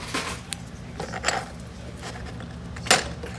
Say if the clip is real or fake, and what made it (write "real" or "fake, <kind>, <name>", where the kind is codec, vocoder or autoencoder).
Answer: real